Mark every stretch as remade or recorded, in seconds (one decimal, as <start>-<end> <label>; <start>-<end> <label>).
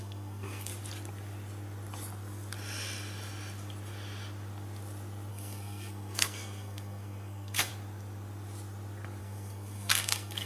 0.0-0.7 remade; 0.7-5.3 recorded; 5.3-7.7 remade; 7.7-9.2 recorded; 9.2-10.5 remade